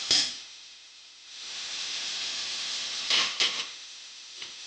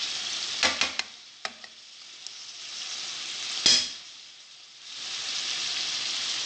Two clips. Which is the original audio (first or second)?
second